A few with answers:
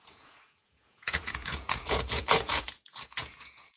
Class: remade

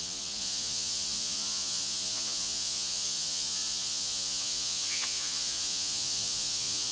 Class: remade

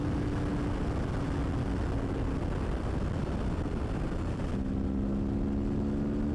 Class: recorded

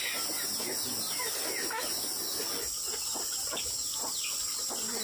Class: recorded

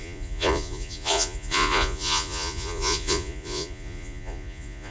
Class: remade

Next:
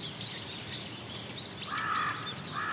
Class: recorded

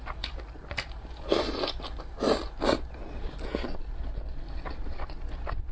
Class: recorded